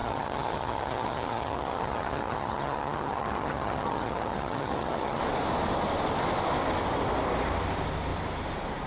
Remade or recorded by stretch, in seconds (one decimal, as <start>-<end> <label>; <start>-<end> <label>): 0.0-5.2 remade; 5.2-8.9 recorded